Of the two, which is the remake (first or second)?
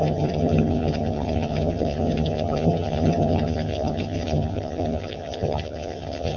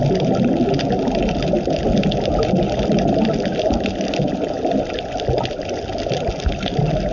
first